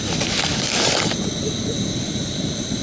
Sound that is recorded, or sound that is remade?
recorded